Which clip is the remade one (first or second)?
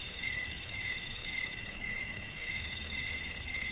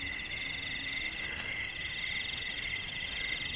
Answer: first